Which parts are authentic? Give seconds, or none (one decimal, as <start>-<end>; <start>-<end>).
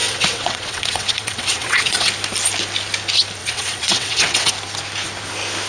2.1-3.4; 4.5-5.7